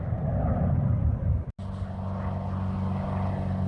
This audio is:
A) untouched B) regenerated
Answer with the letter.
A